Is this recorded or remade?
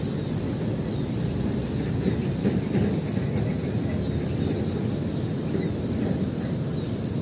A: recorded